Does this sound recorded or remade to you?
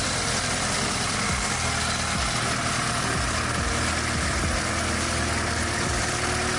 recorded